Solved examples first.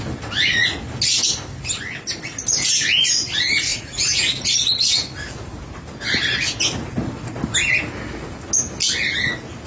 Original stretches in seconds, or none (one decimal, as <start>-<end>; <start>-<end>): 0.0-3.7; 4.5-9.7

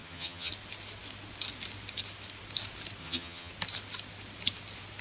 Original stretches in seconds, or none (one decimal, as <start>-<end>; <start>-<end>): 0.5-3.0; 3.5-5.0

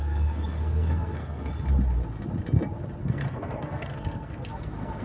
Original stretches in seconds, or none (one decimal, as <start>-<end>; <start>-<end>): 1.5-3.0

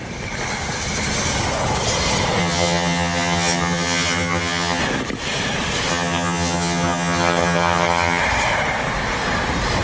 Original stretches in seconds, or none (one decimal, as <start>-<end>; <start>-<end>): 0.0-2.4; 4.8-5.9; 8.2-9.8